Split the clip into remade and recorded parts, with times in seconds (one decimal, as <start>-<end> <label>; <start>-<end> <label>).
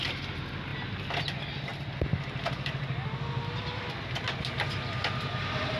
0.0-5.8 recorded